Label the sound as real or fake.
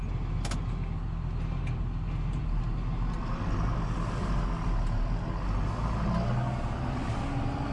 real